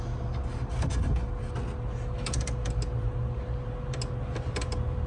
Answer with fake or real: real